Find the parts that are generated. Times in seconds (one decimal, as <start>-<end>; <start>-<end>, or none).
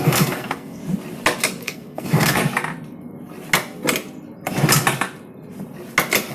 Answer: 0.0-0.8; 1.6-2.4